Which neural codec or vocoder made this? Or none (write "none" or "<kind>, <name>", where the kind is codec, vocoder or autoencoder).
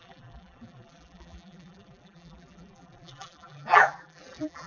vocoder, BigVGAN v2